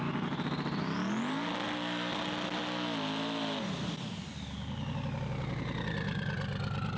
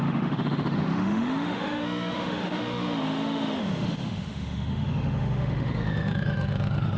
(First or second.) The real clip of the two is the first